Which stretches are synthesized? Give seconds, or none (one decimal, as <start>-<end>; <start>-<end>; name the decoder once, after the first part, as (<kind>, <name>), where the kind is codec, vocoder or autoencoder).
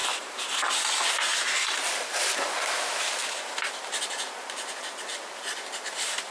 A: none